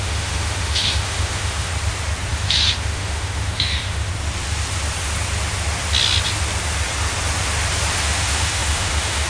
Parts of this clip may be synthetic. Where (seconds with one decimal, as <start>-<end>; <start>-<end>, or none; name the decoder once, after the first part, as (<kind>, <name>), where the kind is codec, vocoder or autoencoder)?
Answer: 0.0-1.7 (autoencoder, DAC-VAE); 2.3-4.1; 8.0-9.3